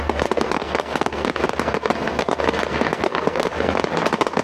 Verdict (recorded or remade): remade